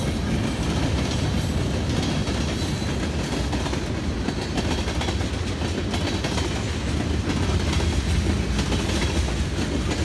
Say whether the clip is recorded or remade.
recorded